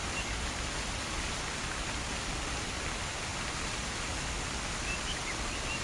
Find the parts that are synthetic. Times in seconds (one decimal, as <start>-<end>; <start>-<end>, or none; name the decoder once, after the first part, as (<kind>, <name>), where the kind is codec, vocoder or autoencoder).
0.0-3.3 (vocoder, BigVGAN v2); 4.2-5.8